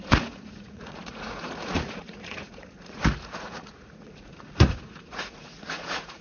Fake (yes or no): yes